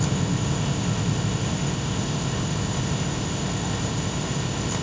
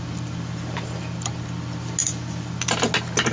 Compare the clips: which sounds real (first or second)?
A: second